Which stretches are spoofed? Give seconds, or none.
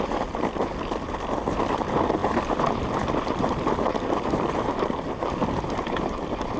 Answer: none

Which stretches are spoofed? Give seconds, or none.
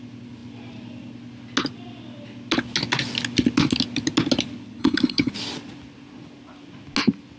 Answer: 4.8-5.3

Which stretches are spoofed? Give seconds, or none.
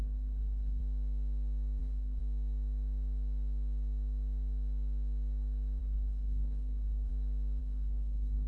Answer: 0.0-0.8; 1.8-2.2; 5.8-7.1; 7.6-8.5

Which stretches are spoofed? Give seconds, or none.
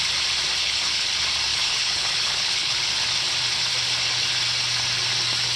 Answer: 0.6-1.1; 1.5-2.9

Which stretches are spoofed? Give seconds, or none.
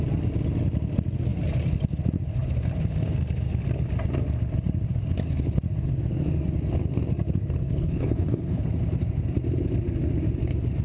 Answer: 7.7-8.7